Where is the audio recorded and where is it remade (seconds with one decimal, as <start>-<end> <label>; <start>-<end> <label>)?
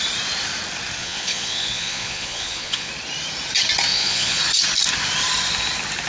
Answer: 0.0-1.0 recorded; 1.0-2.9 remade; 2.9-3.9 recorded; 3.9-4.4 remade; 4.4-6.1 recorded